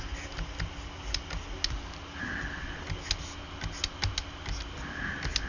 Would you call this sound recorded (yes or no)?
yes